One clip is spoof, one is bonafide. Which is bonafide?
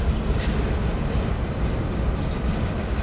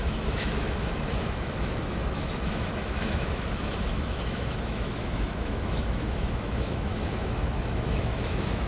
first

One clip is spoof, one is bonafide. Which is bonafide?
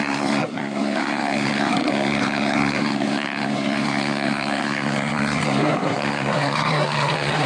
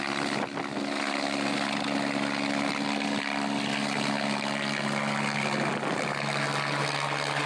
second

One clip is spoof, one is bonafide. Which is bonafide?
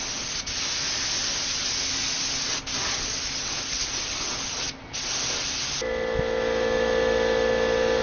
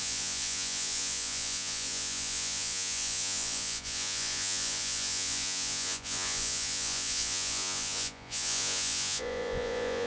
first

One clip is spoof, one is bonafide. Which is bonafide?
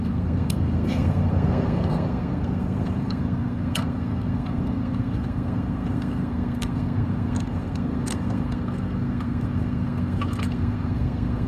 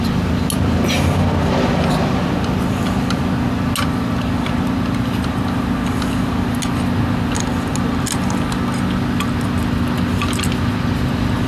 second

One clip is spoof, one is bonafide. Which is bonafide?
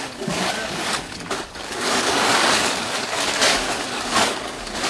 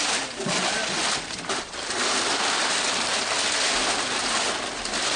second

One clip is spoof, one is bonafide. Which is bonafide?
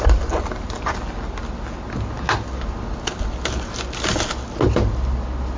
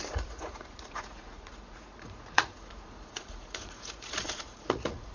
first